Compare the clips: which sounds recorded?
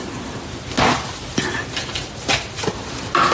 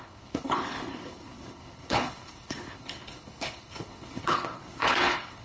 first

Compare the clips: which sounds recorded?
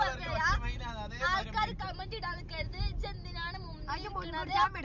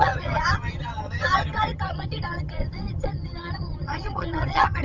first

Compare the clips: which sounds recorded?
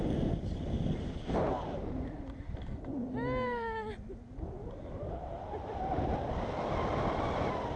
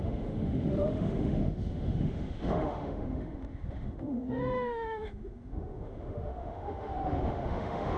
first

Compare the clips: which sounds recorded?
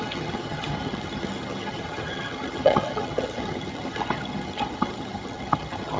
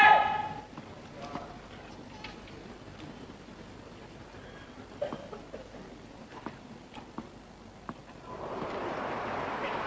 second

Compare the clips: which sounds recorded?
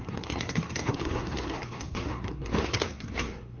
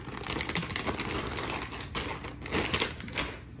second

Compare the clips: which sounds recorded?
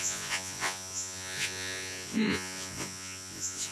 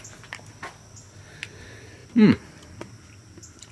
second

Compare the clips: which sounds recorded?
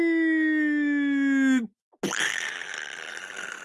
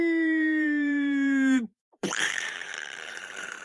first